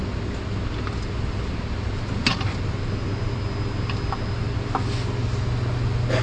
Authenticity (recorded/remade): recorded